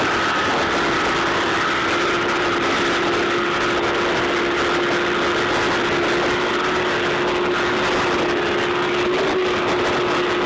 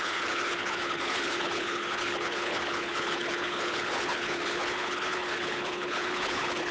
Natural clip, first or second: first